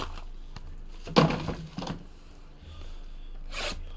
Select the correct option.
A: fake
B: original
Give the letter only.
B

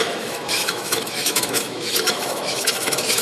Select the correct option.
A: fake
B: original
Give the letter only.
A